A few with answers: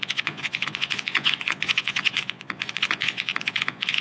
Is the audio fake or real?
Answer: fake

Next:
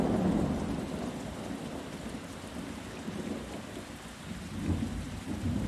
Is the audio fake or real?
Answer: fake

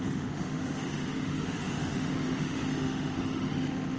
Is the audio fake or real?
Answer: fake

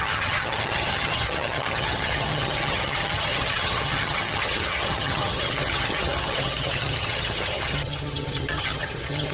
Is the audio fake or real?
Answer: fake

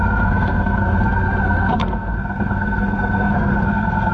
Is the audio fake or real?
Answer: fake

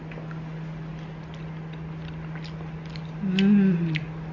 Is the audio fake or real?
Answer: real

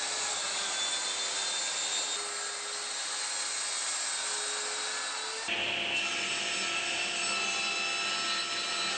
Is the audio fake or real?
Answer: real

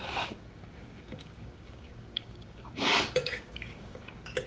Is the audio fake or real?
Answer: fake